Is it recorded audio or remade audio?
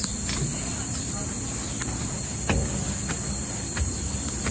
recorded